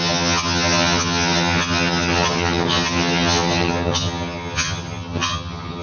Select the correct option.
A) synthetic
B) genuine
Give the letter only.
A